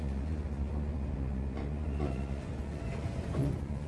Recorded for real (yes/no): no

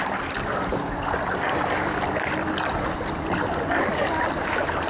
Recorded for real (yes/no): yes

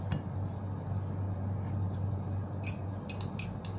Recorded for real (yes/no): yes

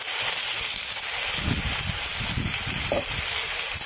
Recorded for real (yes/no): yes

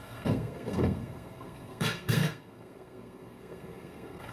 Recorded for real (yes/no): no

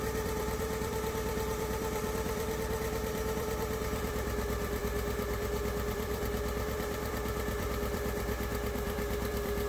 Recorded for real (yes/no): no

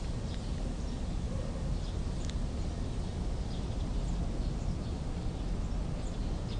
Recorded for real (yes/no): yes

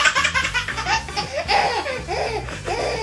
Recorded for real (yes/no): yes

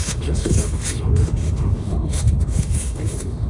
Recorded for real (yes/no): no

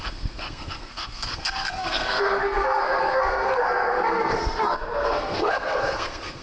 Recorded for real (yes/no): no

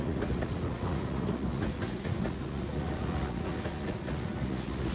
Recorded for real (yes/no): no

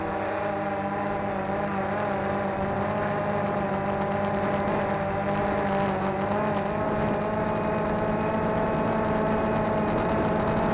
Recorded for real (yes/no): yes